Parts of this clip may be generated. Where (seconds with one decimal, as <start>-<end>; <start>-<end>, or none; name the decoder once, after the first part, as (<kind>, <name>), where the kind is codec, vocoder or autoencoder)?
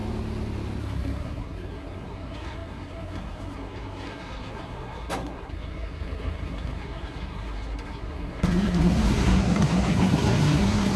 0.8-11.0 (codec, SNAC)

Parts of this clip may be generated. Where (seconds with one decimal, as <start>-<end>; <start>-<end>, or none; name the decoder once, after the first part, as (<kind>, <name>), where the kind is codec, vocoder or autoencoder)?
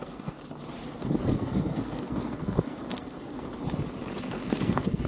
0.0-0.4 (codec, SNAC); 1.0-3.5; 4.2-5.1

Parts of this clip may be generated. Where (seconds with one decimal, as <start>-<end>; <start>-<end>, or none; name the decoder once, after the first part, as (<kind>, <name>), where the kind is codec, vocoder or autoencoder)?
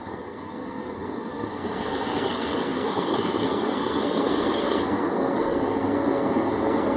0.0-7.0 (codec, SNAC)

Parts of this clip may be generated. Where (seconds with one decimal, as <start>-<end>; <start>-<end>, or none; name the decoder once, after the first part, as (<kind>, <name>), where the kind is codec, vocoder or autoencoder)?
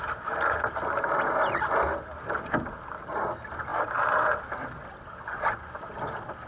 none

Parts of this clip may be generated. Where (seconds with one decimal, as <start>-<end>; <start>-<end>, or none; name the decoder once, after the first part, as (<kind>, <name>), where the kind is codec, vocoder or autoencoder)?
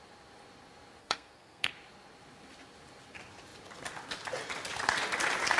1.0-1.7 (codec, SNAC)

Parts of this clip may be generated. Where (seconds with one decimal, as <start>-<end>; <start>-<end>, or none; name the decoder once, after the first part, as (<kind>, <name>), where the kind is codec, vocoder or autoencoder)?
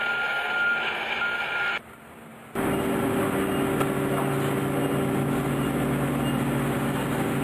none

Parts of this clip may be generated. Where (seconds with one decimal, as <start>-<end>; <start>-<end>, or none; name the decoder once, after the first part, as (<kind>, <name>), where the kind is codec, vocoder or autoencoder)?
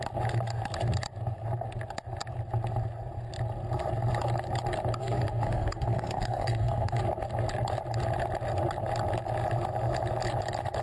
5.0-7.0 (codec, SNAC)